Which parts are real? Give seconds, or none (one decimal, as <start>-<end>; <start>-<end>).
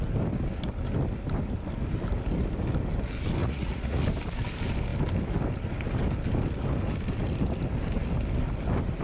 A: 0.0-3.4; 4.0-9.0